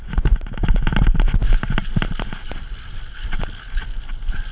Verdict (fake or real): real